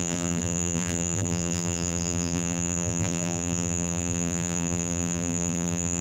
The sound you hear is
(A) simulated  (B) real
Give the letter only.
A